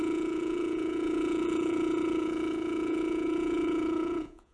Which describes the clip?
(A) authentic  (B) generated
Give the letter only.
B